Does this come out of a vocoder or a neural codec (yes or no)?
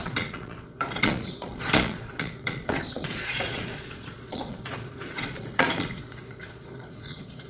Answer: yes